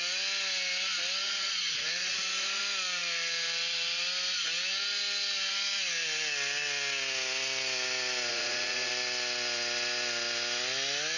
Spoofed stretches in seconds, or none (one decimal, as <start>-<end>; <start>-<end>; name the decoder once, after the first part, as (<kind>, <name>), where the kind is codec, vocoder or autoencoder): 1.2-2.6 (vocoder, Vocos); 8.3-8.9